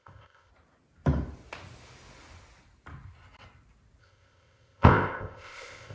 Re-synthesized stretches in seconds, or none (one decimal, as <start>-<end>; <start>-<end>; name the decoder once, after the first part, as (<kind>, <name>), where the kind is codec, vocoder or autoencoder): 0.0-0.5 (codec, ZipCodec); 4.0-5.9